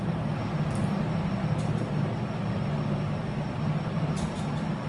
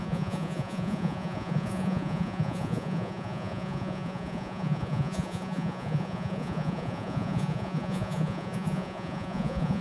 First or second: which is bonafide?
first